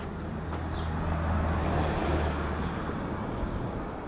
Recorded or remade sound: recorded